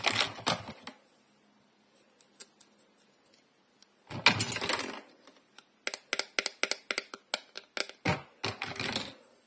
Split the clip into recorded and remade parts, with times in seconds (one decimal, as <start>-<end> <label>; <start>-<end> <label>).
0.0-9.5 recorded